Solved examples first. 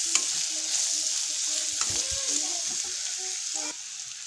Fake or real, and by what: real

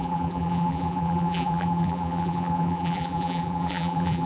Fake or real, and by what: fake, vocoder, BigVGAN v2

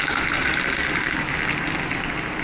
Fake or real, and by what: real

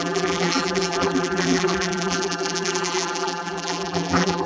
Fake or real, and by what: fake, vocoder, BigVGAN v2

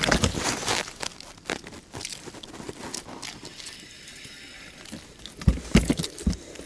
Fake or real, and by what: real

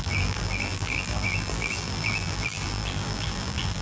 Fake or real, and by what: fake, vocoder, BigVGAN v2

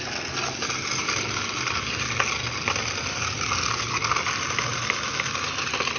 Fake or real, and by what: real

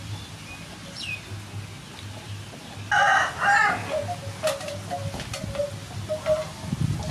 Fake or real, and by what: real